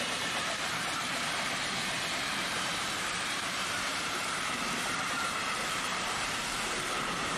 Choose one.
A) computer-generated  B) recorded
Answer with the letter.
A